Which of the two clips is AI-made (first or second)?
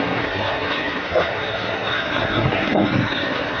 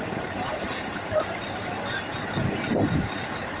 first